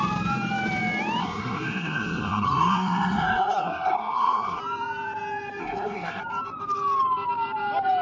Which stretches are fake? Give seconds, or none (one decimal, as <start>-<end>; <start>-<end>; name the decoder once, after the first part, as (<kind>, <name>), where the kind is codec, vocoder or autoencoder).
1.2-4.6 (codec, SNAC); 5.6-6.2